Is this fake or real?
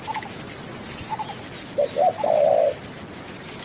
real